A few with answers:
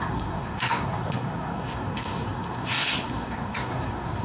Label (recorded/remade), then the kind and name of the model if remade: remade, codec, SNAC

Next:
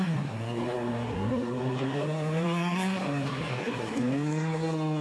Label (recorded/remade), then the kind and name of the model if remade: remade, codec, SNAC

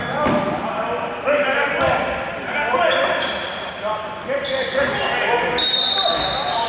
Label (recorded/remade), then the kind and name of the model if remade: recorded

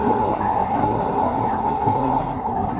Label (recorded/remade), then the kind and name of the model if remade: remade, codec, SNAC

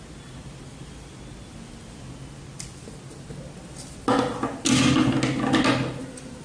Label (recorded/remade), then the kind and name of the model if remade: recorded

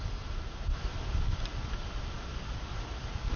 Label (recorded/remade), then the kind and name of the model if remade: recorded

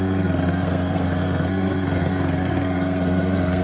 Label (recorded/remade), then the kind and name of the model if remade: remade, codec, SNAC